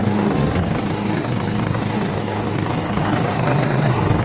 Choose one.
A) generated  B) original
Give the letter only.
A